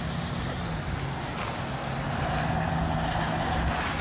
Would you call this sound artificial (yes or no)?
no